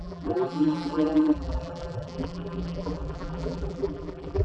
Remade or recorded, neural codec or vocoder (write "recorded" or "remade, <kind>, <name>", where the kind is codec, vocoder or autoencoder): remade, vocoder, BigVGAN v2